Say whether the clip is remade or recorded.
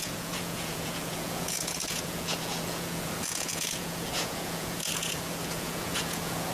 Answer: remade